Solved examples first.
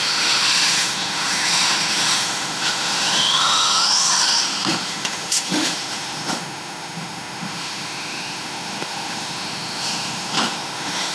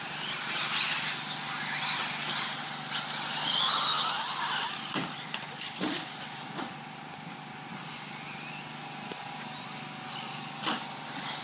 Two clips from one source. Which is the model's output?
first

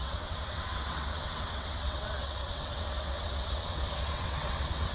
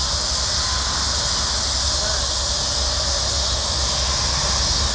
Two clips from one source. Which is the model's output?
first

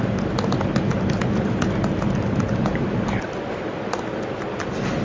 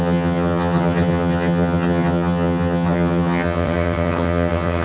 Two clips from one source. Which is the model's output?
second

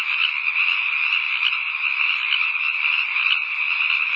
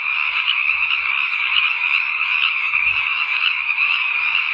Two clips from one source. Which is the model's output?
second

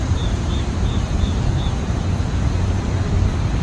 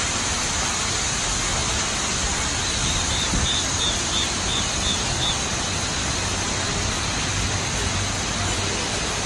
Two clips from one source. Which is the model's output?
first